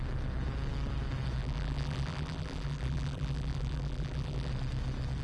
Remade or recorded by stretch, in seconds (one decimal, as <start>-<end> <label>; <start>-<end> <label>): 0.0-1.4 recorded; 1.4-4.5 remade; 4.5-5.2 recorded